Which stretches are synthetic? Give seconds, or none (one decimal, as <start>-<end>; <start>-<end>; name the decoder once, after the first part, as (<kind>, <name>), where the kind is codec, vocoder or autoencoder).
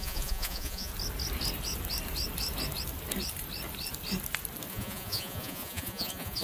0.0-0.9 (vocoder, Vocos); 4.7-6.4